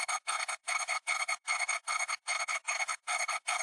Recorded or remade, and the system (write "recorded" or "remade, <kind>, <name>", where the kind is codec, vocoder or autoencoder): remade, codec, HILCodec